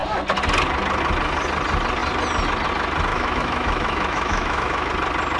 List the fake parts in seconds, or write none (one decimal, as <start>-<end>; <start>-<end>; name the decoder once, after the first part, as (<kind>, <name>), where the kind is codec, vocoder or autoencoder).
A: 3.1-4.9 (autoencoder, DAC-VAE)